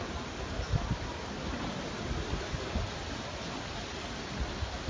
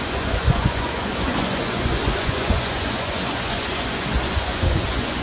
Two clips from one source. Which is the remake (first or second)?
second